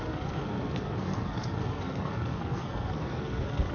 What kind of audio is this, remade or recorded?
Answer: remade